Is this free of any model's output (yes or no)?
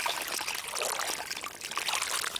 yes